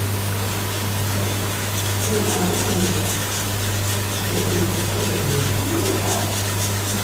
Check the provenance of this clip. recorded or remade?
remade